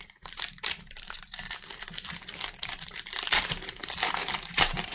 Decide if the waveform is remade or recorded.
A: remade